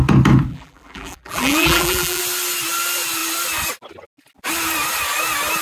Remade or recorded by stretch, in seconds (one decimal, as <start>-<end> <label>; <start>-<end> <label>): 0.0-0.5 recorded; 0.5-2.2 remade; 2.2-5.6 recorded